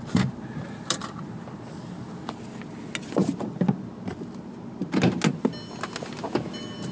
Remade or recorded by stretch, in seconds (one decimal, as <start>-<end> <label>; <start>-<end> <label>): 0.0-6.9 recorded